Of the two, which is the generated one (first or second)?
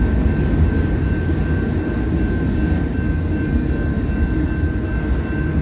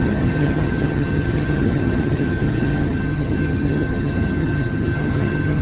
second